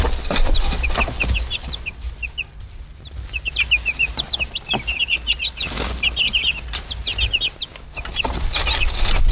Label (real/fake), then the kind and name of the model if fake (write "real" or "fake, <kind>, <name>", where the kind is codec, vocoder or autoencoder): real